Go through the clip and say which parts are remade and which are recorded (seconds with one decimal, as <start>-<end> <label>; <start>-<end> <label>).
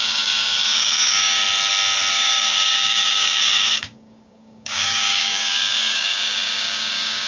0.0-1.4 remade; 1.4-2.1 recorded; 2.1-7.3 remade